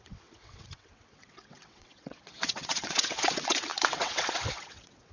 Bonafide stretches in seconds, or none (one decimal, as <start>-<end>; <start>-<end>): none